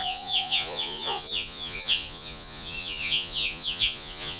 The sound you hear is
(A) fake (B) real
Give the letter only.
A